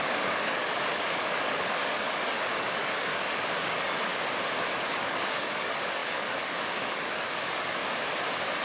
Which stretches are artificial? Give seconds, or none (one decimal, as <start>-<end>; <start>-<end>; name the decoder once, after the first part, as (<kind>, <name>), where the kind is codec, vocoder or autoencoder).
0.0-4.1 (codec, DAC); 4.9-7.8